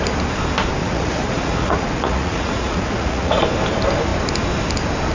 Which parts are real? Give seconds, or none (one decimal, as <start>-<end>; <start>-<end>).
0.0-0.8; 3.4-5.1